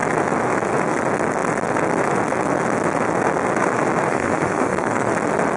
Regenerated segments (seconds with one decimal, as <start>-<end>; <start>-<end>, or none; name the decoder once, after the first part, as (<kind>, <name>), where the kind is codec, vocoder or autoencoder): 4.1-5.1 (codec, SNAC)